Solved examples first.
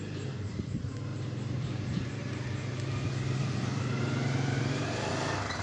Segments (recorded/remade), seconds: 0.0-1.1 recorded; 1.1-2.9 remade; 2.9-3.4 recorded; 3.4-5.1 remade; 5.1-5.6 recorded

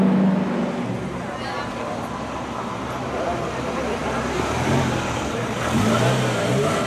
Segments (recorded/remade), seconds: 0.0-4.0 recorded; 4.0-5.8 remade; 5.8-6.9 recorded

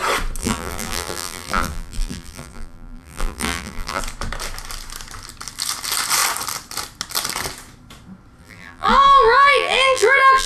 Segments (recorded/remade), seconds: 0.0-0.4 recorded; 0.4-4.0 remade; 4.0-8.4 recorded; 8.4-10.5 remade

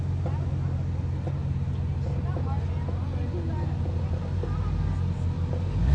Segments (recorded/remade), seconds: 0.0-5.9 recorded

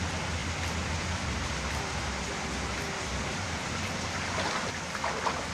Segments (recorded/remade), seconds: 0.0-5.5 recorded

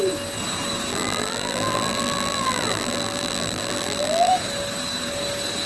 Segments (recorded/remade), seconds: 0.0-0.9 recorded; 0.9-4.3 remade; 4.3-5.7 recorded

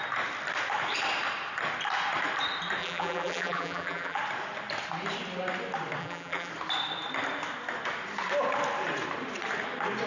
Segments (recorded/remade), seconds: 0.0-2.8 recorded; 2.8-4.2 remade; 4.2-6.0 recorded; 6.0-6.5 remade; 6.5-10.1 recorded

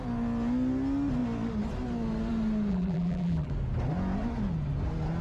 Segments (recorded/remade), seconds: 0.0-2.7 recorded; 2.7-3.5 remade; 3.5-5.2 recorded